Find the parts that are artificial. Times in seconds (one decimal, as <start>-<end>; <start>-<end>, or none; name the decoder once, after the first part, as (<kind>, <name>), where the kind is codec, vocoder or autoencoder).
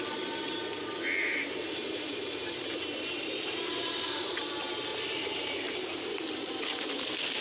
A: 1.2-4.4 (vocoder, BigVGAN v2); 4.9-6.1